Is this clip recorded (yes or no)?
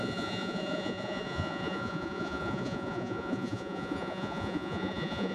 no